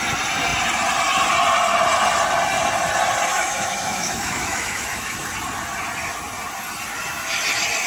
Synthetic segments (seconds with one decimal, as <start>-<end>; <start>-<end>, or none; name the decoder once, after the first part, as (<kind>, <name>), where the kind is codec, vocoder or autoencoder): 3.3-5.3 (autoencoder, DAC-VAE)